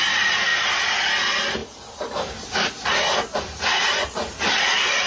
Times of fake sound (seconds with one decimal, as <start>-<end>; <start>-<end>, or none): none